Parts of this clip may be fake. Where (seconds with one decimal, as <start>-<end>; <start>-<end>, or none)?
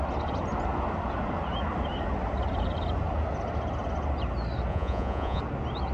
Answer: 4.7-5.4